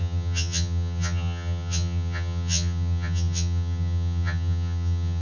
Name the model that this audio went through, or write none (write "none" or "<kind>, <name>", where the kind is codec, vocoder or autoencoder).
vocoder, HiFi-GAN